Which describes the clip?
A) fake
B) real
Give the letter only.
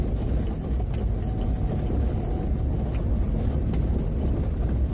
B